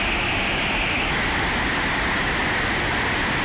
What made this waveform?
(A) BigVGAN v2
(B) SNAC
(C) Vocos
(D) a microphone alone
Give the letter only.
D